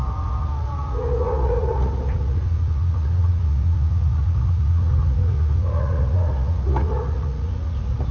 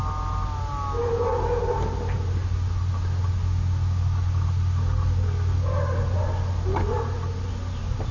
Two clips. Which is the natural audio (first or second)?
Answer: second